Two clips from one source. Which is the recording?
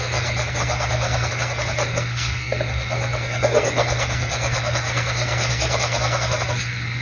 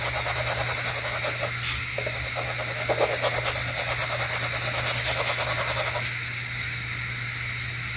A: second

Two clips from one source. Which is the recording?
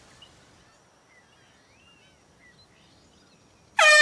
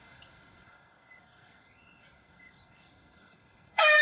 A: first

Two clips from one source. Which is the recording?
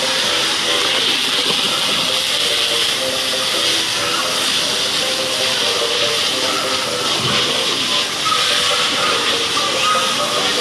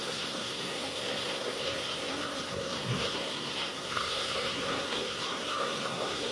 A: first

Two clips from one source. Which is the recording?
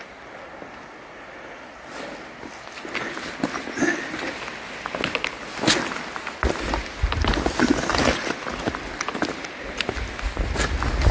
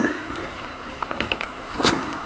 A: first